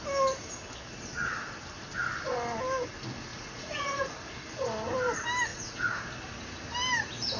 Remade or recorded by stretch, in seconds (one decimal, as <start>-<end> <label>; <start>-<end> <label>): 0.0-3.3 recorded; 3.3-4.1 remade; 4.1-5.5 recorded; 5.5-6.0 remade; 6.0-7.4 recorded